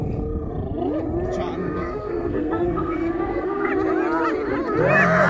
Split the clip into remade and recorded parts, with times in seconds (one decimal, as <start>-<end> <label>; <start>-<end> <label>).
0.0-1.6 recorded; 1.6-3.7 remade; 3.7-5.3 recorded